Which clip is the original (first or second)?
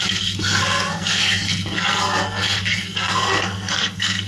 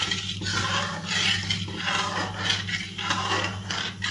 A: second